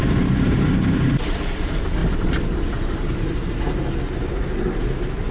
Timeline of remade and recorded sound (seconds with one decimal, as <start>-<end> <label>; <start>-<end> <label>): 0.0-1.4 remade; 1.4-2.0 recorded; 2.0-3.6 remade; 3.6-5.3 recorded